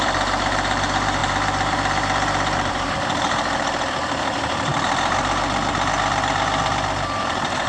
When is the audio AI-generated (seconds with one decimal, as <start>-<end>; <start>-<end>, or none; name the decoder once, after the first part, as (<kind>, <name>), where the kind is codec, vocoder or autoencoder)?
0.0-4.7 (vocoder, BigVGAN v2); 7.2-7.7